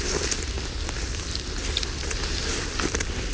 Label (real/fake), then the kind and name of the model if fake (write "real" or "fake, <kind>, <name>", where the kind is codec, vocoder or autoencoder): real